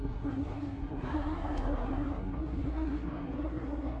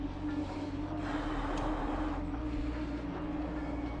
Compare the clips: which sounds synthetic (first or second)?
first